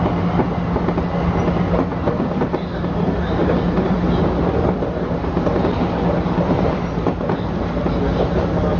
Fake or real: real